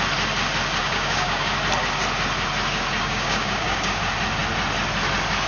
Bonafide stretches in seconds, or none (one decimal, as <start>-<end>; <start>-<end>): 0.0-0.8; 1.5-3.0; 4.0-5.5

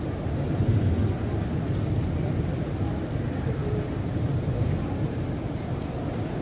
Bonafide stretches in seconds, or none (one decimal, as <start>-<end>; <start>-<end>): 0.0-6.4

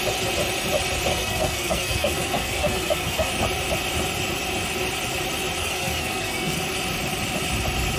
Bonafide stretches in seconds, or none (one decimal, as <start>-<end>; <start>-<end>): 0.0-1.1; 3.3-5.6; 6.6-8.0

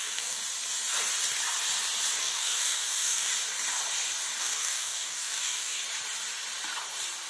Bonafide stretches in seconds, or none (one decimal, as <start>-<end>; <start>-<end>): 0.4-2.2; 3.3-4.4; 5.8-7.3

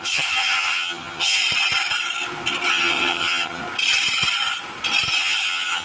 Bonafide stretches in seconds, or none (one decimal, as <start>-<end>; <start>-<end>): 1.4-2.7; 3.6-5.2

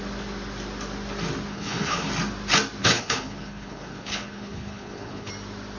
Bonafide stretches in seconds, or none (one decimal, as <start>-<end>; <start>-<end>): 0.0-1.5; 2.1-2.8; 5.3-5.8

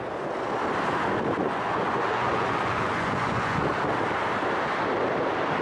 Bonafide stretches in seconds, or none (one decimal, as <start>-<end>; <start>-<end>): 0.0-1.4; 3.7-5.6

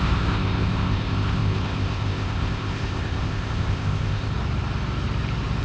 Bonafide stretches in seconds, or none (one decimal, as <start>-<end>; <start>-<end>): 4.3-5.6